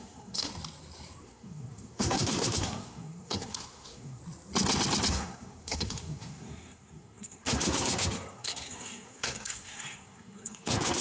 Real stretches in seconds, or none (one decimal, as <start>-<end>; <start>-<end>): 0.5-1.2; 4.2-5.1